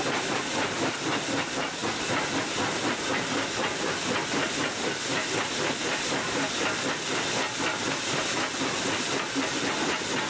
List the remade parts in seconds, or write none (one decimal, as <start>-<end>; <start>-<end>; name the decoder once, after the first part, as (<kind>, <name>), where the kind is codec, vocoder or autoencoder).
none